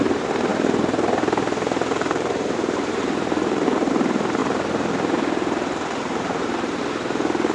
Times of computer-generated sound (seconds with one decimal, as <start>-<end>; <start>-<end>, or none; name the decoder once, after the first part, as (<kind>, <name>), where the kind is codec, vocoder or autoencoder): 0.5-3.9 (vocoder, BigVGAN v2); 4.4-6.8